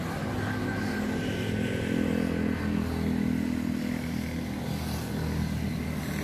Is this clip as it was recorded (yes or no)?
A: yes